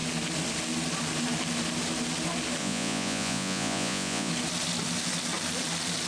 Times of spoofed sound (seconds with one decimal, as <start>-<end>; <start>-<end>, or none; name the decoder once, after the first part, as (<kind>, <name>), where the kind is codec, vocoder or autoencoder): 2.6-4.3 (vocoder, Vocos)